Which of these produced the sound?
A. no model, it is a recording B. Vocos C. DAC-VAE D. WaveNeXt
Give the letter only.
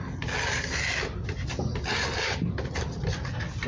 A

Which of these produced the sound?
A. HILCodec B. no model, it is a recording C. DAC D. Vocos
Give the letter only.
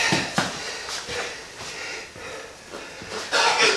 B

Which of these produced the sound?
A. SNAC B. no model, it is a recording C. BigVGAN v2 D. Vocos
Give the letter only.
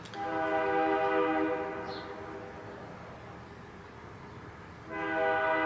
B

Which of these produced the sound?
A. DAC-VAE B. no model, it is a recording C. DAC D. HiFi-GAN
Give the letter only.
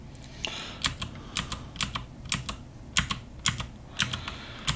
B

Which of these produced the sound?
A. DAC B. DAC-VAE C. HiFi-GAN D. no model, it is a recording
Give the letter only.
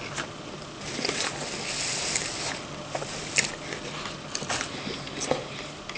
D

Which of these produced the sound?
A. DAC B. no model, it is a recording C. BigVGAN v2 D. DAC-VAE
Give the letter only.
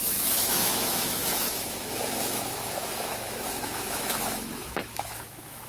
D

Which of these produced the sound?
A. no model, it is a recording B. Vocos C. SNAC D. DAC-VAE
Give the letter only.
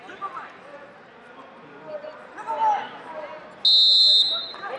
A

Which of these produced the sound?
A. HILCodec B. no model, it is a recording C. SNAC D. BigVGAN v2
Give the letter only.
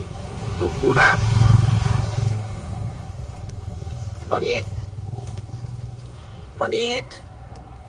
C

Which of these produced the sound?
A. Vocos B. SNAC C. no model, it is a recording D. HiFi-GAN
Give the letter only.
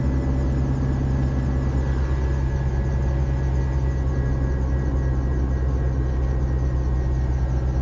C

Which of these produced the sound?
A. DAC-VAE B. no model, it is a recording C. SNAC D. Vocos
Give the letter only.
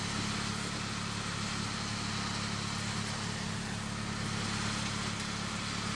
B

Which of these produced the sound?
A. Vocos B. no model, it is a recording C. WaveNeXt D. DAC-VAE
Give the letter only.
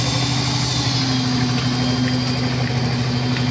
B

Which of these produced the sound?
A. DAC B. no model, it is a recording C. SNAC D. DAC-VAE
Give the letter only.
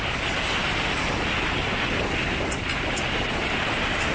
B